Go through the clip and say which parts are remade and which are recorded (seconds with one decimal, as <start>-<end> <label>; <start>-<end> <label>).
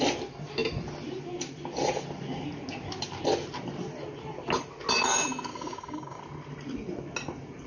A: 0.0-5.5 recorded; 5.5-6.2 remade; 6.2-7.7 recorded